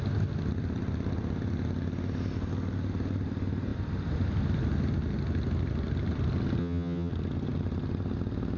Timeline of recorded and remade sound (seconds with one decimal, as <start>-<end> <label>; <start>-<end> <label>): 0.0-6.6 recorded; 6.6-7.1 remade; 7.1-8.6 recorded